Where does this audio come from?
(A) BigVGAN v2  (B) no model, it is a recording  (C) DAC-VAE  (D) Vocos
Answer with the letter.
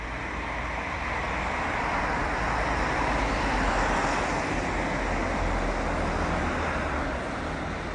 B